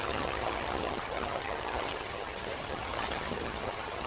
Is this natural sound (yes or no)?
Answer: no